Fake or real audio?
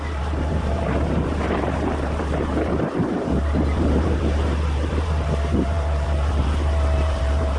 fake